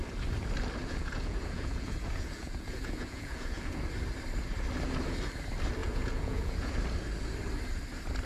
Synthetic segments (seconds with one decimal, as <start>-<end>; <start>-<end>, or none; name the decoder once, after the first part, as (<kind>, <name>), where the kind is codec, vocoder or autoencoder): 0.8-3.8 (vocoder, Vocos); 5.8-6.7